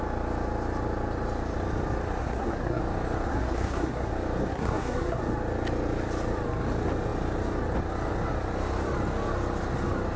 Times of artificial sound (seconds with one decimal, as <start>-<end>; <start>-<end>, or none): 2.2-2.8; 3.3-4.1; 4.5-5.2